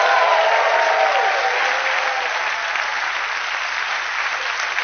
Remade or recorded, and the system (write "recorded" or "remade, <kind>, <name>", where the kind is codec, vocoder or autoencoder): recorded